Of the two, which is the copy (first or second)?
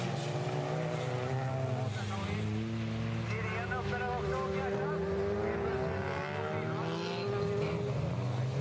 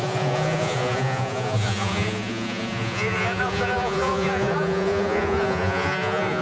second